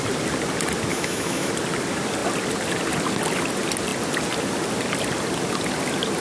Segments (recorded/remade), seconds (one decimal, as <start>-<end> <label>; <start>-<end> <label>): 0.0-0.9 recorded; 0.9-1.5 remade; 1.5-6.2 recorded